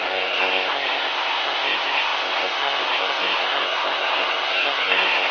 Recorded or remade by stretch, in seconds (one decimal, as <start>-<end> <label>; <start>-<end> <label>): 0.0-5.3 remade